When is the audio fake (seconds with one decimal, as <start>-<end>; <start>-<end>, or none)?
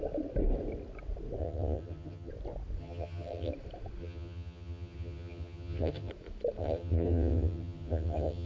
1.4-2.3; 2.8-3.5; 4.0-6.1; 6.6-8.5